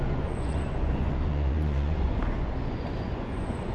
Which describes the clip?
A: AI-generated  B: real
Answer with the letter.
A